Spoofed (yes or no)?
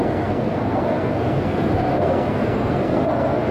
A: yes